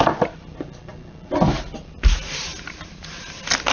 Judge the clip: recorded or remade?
recorded